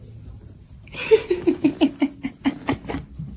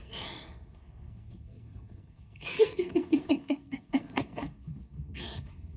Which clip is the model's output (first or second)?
second